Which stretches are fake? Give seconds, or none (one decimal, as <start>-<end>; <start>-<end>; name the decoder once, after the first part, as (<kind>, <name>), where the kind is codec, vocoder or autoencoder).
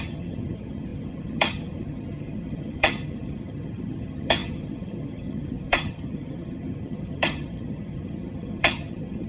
0.0-9.3 (vocoder, HiFi-GAN)